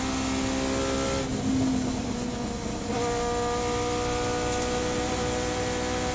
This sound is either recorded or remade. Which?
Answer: recorded